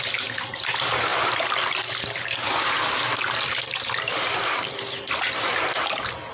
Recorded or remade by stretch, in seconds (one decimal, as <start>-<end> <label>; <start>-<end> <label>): 0.0-6.3 recorded